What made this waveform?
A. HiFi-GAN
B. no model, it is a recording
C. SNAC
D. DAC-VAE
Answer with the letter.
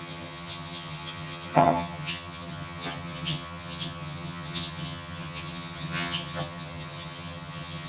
A